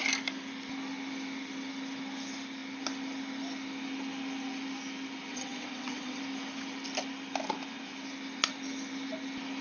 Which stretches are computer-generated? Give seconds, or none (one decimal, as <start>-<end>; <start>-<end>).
5.3-6.2